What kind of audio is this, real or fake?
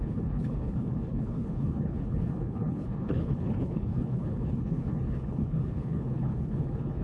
fake